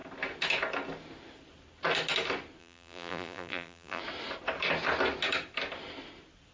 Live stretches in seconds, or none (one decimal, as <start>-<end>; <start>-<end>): 0.0-2.6; 4.0-6.5